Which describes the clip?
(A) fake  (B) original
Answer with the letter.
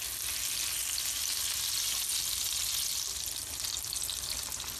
B